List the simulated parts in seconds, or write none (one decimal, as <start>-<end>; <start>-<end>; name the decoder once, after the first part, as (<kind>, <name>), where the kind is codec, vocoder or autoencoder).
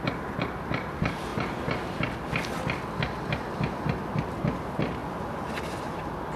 none